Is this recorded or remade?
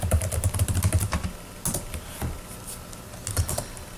recorded